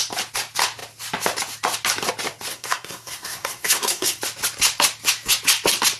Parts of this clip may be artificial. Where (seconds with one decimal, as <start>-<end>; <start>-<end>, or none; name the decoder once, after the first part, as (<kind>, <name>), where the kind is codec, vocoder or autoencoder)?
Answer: 2.5-4.2 (codec, SNAC)